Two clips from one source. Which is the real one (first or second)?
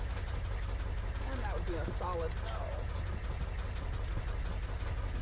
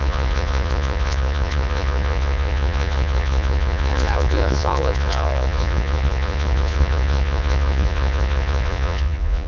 first